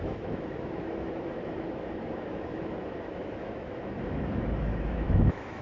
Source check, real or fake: fake